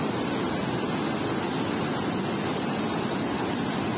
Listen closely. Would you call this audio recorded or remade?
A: recorded